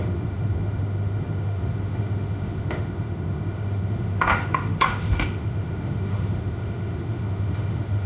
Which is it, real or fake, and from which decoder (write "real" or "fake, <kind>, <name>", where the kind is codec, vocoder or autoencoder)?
fake, autoencoder, DAC-VAE